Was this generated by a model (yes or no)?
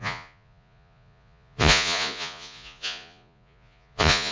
yes